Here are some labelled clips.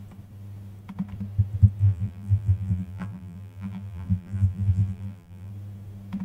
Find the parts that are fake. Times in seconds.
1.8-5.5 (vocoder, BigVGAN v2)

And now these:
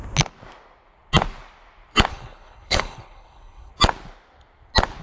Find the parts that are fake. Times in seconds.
2.1-3.7 (codec, HILCodec)

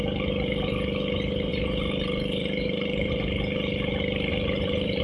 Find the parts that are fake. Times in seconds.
1.5-3.1 (vocoder, BigVGAN v2); 4.3-5.0

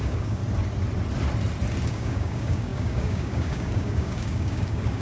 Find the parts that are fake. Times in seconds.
0.0-0.4 (codec, DAC); 1.9-5.0

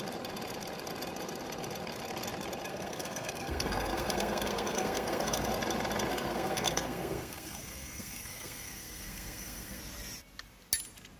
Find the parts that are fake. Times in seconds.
2.7-5.5 (codec, SNAC); 6.1-9.8